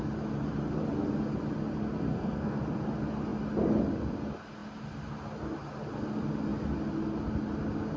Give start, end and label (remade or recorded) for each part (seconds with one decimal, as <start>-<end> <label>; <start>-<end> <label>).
0.0-2.1 recorded; 2.1-2.6 remade; 2.6-8.0 recorded